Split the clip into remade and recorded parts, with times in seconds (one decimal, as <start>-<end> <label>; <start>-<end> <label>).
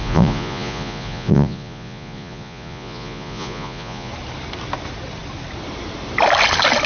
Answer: 0.0-4.1 remade; 4.1-6.9 recorded